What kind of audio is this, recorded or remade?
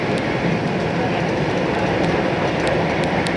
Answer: recorded